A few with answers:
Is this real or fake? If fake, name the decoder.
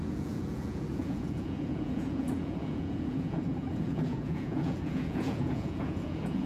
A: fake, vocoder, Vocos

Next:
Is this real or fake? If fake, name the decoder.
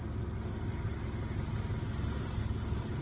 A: real